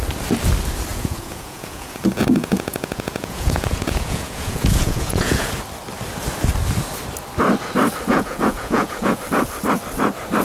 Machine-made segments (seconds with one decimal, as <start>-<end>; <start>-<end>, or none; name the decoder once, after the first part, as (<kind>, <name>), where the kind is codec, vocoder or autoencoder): 0.9-5.5 (vocoder, Vocos); 8.1-9.2